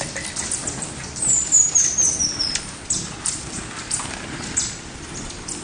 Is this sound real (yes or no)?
no